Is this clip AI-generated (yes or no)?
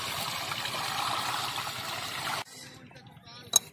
no